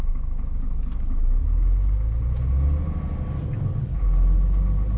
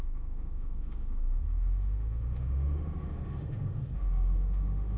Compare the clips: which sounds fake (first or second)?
second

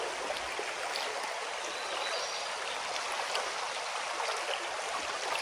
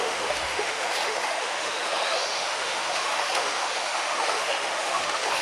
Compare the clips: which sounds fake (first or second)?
second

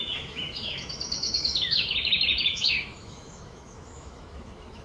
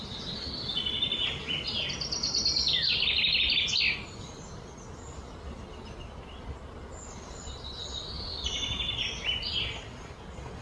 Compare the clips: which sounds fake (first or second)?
first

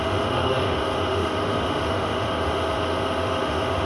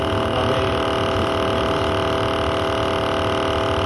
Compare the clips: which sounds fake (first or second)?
first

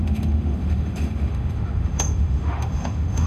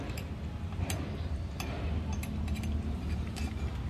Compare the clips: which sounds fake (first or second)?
first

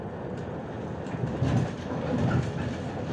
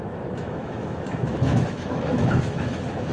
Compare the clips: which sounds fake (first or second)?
second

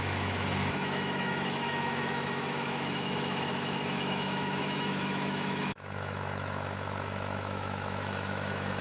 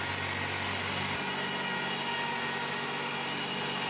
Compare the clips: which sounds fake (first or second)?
first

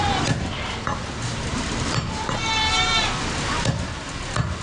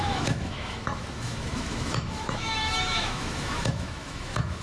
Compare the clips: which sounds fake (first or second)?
second